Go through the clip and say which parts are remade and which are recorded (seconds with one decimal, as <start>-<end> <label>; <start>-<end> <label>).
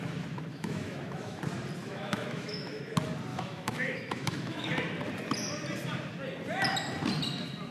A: 0.0-0.5 recorded; 0.5-1.4 remade; 1.4-1.8 recorded; 1.8-2.8 remade; 2.8-3.3 recorded; 3.3-4.7 remade; 4.7-7.7 recorded